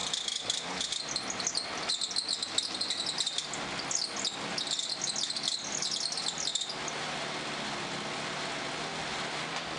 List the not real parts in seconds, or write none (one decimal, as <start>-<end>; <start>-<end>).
none